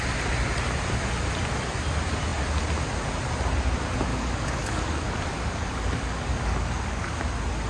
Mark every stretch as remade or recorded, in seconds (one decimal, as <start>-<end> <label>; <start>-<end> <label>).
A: 0.0-4.1 recorded; 4.1-7.3 remade; 7.3-7.7 recorded